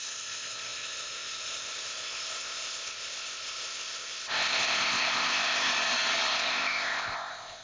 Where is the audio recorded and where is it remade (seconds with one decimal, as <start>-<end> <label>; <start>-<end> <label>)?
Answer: 0.0-5.7 remade; 5.7-6.3 recorded; 6.3-7.6 remade